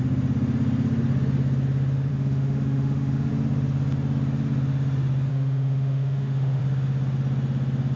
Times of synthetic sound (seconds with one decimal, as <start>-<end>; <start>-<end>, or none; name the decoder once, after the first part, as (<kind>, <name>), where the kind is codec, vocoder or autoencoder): 2.1-3.3 (autoencoder, DAC-VAE); 5.3-6.6